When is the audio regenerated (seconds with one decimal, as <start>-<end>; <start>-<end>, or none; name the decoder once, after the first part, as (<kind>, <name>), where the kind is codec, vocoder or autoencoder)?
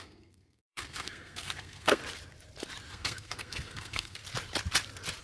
0.0-2.0 (codec, SNAC); 2.9-4.2